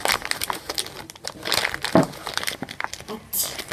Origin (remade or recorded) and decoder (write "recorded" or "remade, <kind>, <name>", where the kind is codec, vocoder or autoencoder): recorded